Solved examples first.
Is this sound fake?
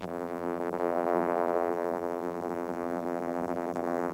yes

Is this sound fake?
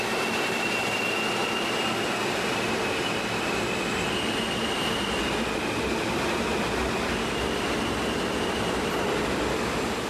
no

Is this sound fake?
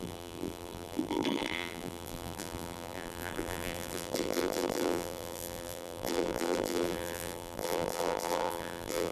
yes